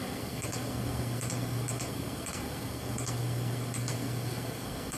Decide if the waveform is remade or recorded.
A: remade